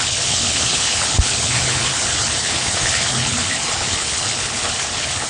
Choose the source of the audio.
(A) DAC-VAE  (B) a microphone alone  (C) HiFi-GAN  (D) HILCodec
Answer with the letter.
D